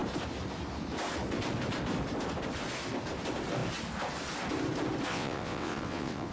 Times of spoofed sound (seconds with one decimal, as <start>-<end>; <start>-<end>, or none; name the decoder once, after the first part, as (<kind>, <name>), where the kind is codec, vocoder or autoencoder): 5.1-6.3 (vocoder, WaveNeXt)